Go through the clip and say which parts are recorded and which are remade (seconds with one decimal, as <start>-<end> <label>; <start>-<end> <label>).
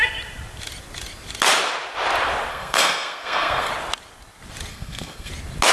0.0-2.5 recorded; 2.5-3.7 remade; 3.7-4.7 recorded; 4.7-5.3 remade; 5.3-5.7 recorded